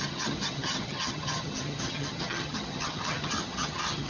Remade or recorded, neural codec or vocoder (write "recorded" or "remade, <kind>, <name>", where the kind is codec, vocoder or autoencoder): remade, vocoder, HiFi-GAN